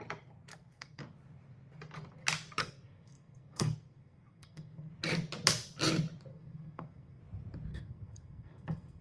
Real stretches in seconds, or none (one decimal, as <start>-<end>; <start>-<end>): 0.0-0.5; 1.0-2.6; 4.9-6.3; 7.2-7.7